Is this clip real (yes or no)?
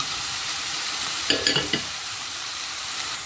no